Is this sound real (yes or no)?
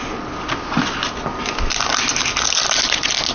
yes